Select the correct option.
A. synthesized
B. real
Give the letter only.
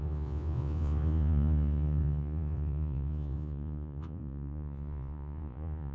A